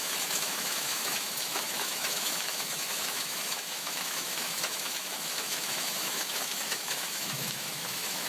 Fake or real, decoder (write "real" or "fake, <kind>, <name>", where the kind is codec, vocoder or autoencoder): fake, autoencoder, DAC-VAE